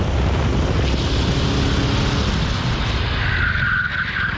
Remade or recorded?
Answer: recorded